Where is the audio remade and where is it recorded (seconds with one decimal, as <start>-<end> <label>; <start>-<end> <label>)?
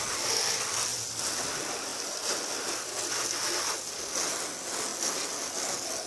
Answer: 0.0-6.1 recorded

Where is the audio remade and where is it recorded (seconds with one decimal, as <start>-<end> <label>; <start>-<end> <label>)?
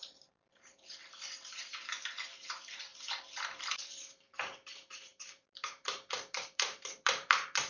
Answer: 0.0-1.0 remade; 1.0-1.6 recorded; 1.6-7.7 remade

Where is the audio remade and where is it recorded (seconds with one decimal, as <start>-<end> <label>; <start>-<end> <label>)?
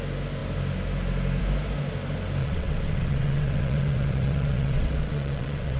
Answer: 0.0-2.4 recorded; 2.4-5.8 remade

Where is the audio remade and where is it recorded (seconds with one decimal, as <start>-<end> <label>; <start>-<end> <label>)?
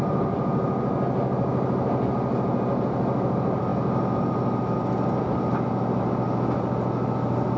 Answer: 0.0-7.6 recorded